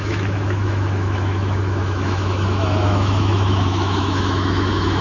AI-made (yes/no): yes